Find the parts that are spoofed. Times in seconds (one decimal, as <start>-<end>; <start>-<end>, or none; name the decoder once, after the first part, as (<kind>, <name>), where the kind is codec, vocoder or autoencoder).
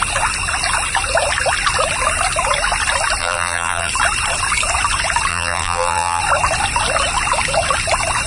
3.2-3.9 (vocoder, BigVGAN v2); 5.3-6.2